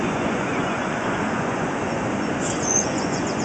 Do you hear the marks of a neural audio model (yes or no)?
yes